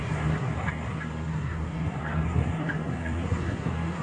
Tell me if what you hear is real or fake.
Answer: fake